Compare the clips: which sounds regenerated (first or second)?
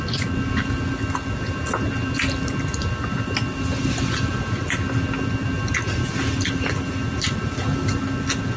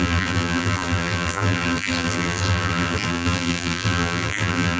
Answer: second